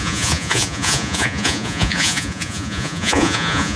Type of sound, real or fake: fake